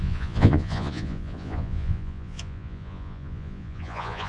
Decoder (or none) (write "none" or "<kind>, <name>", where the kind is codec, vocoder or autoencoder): vocoder, Vocos